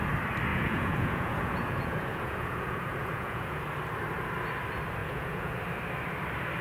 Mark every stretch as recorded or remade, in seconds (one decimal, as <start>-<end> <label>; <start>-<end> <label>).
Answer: 0.0-0.5 recorded; 0.5-3.6 remade; 3.6-5.0 recorded; 5.0-5.6 remade; 5.6-6.6 recorded